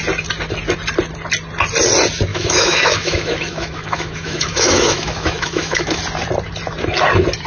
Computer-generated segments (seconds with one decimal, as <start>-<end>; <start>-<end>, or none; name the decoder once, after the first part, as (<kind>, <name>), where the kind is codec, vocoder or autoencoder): 2.3-6.0 (autoencoder, DAC-VAE)